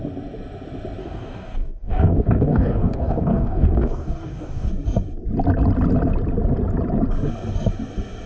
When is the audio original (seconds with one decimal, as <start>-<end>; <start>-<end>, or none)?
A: 0.0-1.0; 4.7-8.3